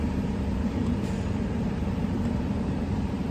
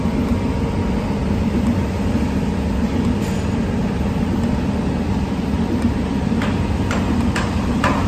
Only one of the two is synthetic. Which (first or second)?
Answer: first